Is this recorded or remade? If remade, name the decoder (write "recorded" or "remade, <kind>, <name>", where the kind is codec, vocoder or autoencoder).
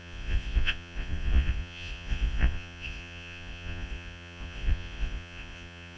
remade, vocoder, Vocos